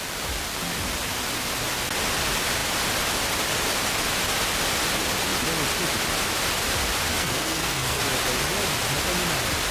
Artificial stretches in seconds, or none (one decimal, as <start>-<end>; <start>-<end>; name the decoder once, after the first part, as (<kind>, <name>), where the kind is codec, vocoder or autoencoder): 7.1-8.0 (codec, SNAC)